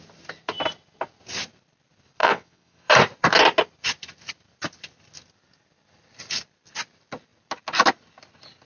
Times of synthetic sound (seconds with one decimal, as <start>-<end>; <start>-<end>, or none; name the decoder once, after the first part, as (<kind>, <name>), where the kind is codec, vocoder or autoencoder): 2.2-2.9 (vocoder, WaveNeXt)

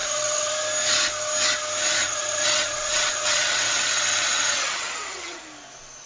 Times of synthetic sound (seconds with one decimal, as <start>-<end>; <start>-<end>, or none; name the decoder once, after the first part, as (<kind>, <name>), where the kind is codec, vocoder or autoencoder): 0.0-0.5 (vocoder, WaveNeXt); 2.0-5.4

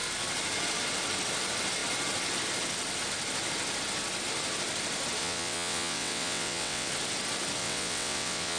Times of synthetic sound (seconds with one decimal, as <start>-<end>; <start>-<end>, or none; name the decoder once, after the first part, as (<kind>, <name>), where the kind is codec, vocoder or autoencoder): 5.2-6.9 (vocoder, WaveNeXt); 7.6-8.6

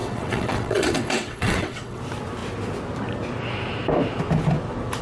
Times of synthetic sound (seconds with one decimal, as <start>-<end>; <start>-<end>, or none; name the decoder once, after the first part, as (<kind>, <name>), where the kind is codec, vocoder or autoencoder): 0.0-2.0 (vocoder, WaveNeXt)